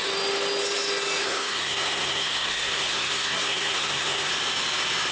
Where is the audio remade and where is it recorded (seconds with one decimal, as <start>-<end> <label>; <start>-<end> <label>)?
0.0-1.2 recorded; 1.2-4.3 remade; 4.3-5.1 recorded